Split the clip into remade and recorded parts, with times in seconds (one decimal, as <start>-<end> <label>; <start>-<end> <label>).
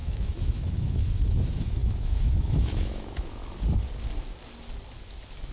0.0-3.4 remade; 3.4-5.5 recorded